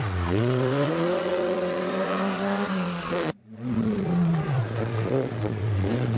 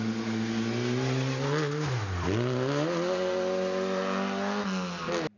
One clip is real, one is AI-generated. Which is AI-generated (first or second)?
first